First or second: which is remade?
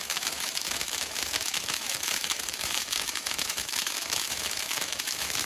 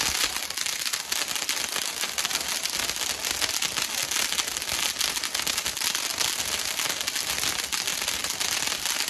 first